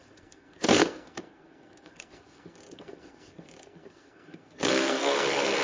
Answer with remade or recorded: remade